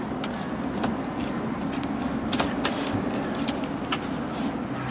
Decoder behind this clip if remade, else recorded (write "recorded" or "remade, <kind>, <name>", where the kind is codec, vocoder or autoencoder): recorded